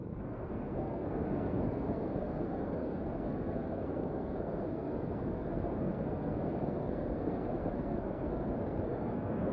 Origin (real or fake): fake